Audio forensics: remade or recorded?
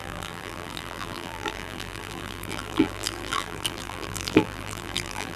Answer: remade